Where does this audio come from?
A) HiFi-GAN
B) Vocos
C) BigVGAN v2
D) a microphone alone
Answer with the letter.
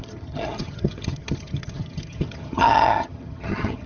A